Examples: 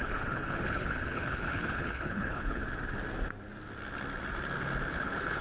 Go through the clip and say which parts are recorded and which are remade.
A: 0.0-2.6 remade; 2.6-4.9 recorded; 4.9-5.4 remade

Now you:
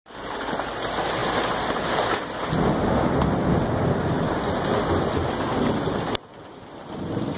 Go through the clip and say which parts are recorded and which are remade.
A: 0.0-7.4 recorded

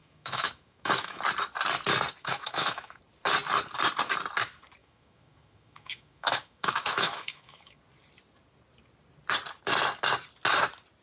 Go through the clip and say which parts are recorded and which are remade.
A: 0.0-1.2 remade; 1.2-2.2 recorded; 2.2-3.0 remade; 3.0-4.8 recorded; 4.8-7.8 remade; 7.8-11.0 recorded